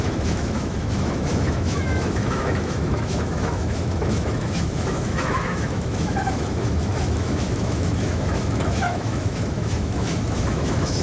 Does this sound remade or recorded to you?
remade